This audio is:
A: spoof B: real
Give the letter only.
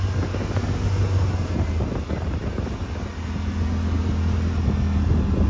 B